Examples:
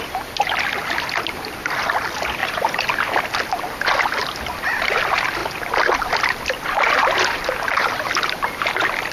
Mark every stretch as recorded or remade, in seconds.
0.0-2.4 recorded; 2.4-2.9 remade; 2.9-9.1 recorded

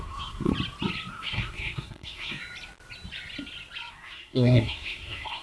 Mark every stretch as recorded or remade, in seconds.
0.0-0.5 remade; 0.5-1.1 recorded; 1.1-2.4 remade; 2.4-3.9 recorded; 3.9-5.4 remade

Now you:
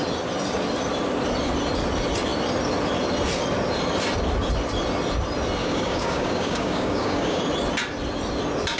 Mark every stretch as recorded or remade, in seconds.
0.0-5.6 recorded; 5.6-7.4 remade; 7.4-8.8 recorded

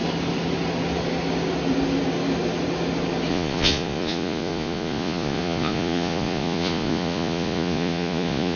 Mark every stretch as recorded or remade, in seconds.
0.0-3.3 recorded; 3.3-8.6 remade

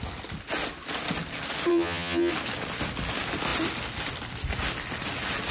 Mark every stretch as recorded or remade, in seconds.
0.0-1.7 recorded; 1.7-2.3 remade; 2.3-5.5 recorded

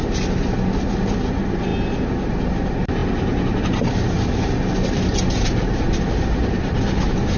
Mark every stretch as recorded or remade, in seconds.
0.0-7.4 recorded